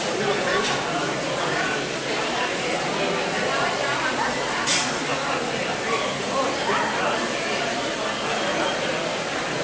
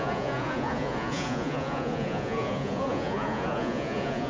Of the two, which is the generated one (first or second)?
second